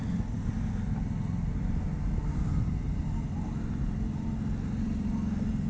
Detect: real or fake real